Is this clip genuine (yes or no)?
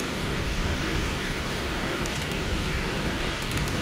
no